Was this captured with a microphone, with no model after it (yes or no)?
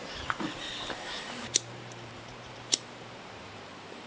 no